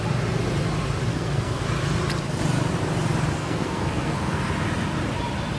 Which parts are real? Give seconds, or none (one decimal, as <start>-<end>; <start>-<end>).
0.0-1.1; 1.6-3.4; 4.5-5.6